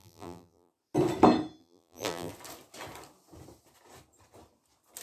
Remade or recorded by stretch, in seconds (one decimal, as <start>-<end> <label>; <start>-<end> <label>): 0.0-0.7 remade; 0.7-1.6 recorded; 1.6-2.3 remade; 2.3-5.0 recorded

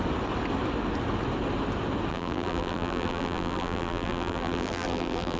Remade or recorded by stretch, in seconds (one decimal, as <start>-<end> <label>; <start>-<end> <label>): 0.0-2.1 recorded; 2.1-5.4 remade

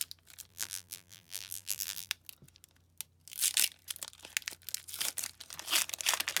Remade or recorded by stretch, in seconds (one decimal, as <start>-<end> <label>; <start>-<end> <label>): 0.0-0.5 recorded; 0.5-2.1 remade; 2.1-6.4 recorded

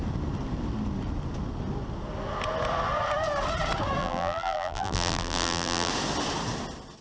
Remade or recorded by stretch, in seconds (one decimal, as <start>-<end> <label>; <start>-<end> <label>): 0.0-4.0 recorded; 4.0-5.9 remade; 5.9-7.0 recorded

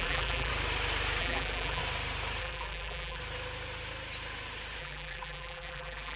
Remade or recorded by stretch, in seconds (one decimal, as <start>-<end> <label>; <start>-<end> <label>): 0.0-0.5 remade; 0.5-1.2 recorded; 1.2-1.8 remade; 1.8-2.4 recorded; 2.4-3.2 remade; 3.2-4.8 recorded; 4.8-6.2 remade

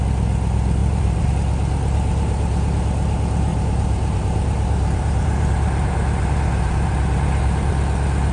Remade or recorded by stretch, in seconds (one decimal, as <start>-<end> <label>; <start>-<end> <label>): 0.0-0.8 recorded; 0.8-1.3 remade; 1.3-3.5 recorded; 3.5-7.7 remade; 7.7-8.3 recorded

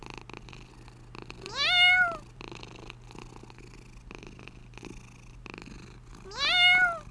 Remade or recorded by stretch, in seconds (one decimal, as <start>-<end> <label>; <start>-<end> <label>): 0.0-7.1 recorded

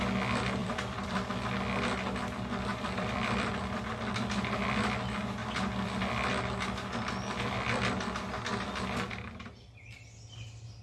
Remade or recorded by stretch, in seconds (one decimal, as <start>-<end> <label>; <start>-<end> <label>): 0.0-0.6 recorded; 0.6-1.3 remade; 1.3-2.7 recorded; 2.7-3.5 remade; 3.5-5.4 recorded; 5.4-6.3 remade; 6.3-10.8 recorded